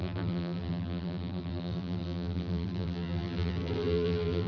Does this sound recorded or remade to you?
remade